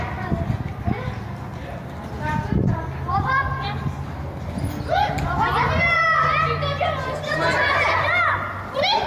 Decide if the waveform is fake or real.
real